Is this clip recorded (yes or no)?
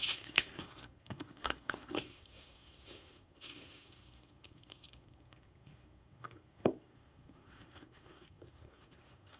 no